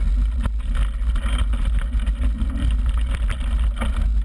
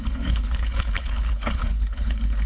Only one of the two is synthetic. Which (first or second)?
second